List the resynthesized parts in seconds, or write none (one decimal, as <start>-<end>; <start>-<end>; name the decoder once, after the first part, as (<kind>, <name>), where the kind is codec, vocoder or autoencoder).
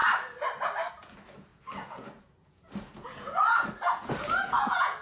0.9-5.0 (vocoder, Vocos)